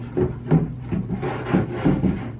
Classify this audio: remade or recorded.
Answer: remade